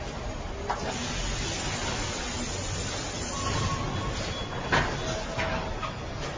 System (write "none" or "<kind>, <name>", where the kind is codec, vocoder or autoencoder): none